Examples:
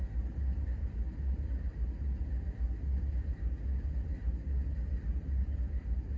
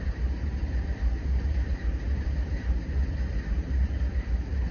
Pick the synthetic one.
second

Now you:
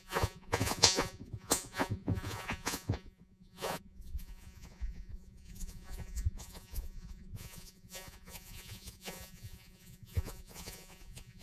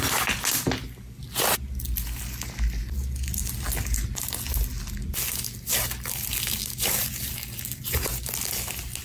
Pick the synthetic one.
first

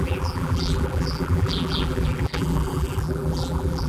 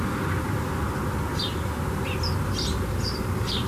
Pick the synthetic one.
first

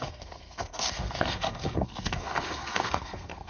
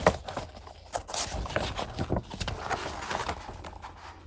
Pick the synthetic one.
first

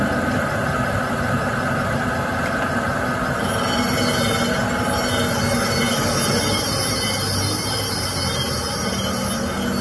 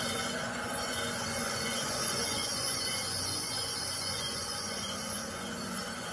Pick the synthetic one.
second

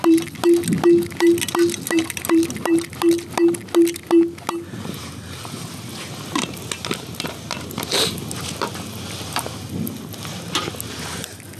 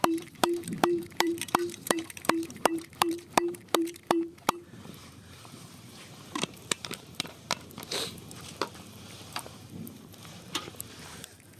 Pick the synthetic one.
second